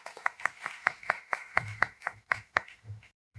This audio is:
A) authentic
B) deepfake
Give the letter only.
B